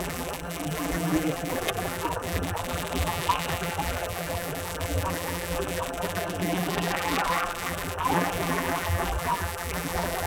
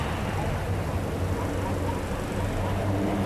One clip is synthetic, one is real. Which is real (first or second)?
second